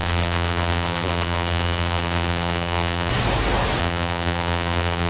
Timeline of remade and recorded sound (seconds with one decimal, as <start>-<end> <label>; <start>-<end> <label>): 0.0-3.1 remade; 3.1-3.8 recorded; 3.8-5.1 remade